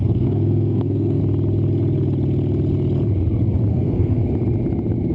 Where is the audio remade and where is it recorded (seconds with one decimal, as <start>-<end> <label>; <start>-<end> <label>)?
0.0-1.2 remade; 1.2-3.7 recorded; 3.7-4.2 remade; 4.2-5.1 recorded